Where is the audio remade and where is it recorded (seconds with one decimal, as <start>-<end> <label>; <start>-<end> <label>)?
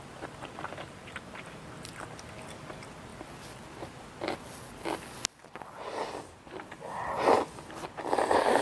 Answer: 0.0-1.0 recorded; 1.0-1.7 remade; 1.7-8.6 recorded